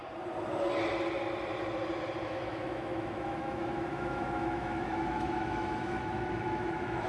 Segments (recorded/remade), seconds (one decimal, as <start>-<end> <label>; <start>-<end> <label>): 0.0-2.2 recorded; 2.2-7.1 remade